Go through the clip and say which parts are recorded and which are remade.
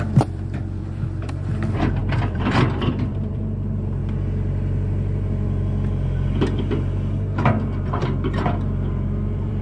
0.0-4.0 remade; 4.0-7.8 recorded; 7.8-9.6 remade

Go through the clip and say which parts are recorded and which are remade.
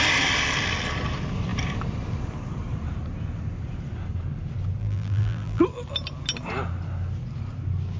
0.0-4.8 recorded; 4.8-5.6 remade; 5.6-8.0 recorded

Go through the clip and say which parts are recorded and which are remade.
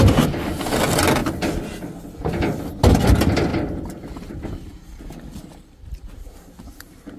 0.0-3.5 recorded; 3.5-4.3 remade; 4.3-7.2 recorded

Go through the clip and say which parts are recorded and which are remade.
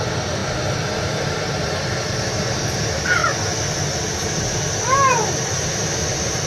0.0-0.4 remade; 0.4-1.0 recorded; 1.0-3.2 remade; 3.2-5.4 recorded; 5.4-6.5 remade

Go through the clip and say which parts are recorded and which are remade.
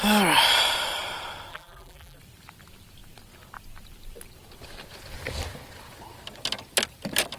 0.0-1.5 recorded; 1.5-2.2 remade; 2.2-7.4 recorded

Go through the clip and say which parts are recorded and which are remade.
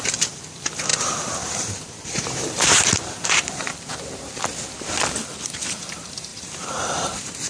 0.0-4.5 remade; 4.5-5.3 recorded; 5.3-7.5 remade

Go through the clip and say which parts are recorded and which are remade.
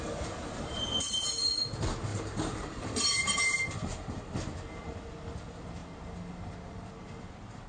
0.0-2.1 recorded; 2.1-4.2 remade; 4.2-7.7 recorded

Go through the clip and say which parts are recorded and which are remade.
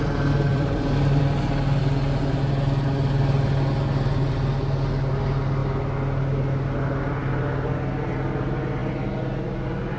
0.0-0.5 recorded; 0.5-1.2 remade; 1.2-10.0 recorded